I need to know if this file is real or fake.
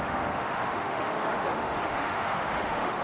fake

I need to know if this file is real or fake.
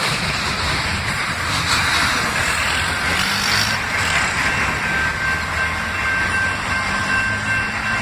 real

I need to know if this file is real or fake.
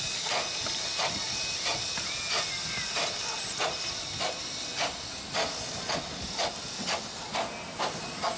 real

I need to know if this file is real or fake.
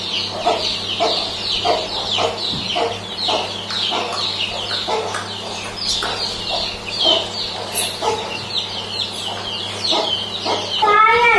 real